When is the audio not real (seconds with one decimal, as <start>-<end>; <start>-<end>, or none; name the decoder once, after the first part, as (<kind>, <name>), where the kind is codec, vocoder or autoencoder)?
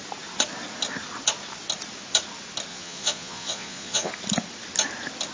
2.7-4.1 (vocoder, Vocos)